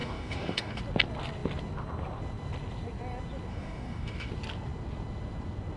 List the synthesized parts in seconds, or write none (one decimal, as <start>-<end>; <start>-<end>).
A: 0.0-0.8; 3.5-4.3

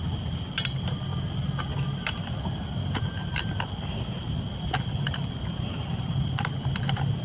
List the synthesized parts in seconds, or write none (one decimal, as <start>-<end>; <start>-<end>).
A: none

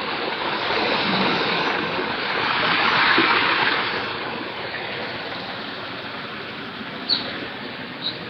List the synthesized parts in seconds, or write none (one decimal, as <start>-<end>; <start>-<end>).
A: 0.0-5.0; 7.5-8.3

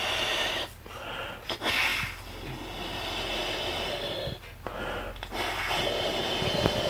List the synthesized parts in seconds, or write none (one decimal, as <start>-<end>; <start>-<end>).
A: none